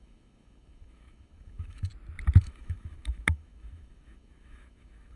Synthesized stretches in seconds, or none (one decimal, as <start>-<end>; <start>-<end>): 0.0-1.9; 2.4-5.2